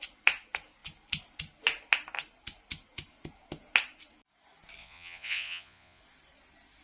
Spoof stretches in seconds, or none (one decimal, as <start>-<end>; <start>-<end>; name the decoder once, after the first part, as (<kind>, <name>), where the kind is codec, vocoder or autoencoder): 4.8-6.0 (vocoder, Vocos)